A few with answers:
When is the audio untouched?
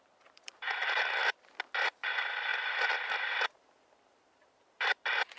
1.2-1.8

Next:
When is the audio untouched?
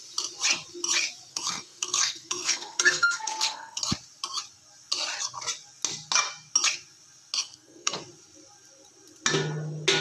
0.0-1.3; 3.8-7.4; 8.0-10.0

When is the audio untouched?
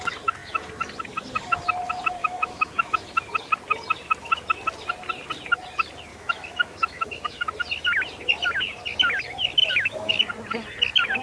0.0-2.2; 2.9-6.1; 7.5-9.6; 10.2-11.2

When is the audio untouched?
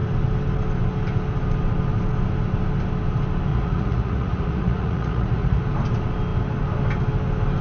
0.0-3.5; 5.6-7.6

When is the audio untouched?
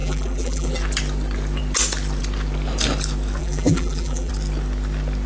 0.8-3.4; 4.3-5.3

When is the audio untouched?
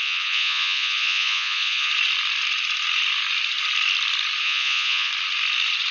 1.9-4.4; 5.1-5.9